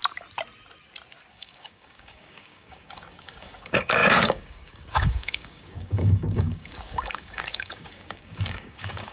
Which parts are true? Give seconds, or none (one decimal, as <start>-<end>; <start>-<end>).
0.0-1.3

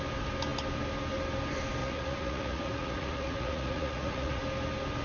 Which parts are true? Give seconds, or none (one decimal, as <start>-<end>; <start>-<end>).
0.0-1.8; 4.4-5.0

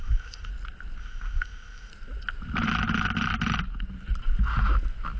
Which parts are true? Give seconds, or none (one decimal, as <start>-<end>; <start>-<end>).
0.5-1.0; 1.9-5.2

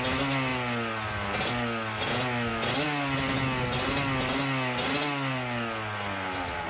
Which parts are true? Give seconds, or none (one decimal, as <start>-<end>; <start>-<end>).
0.0-6.7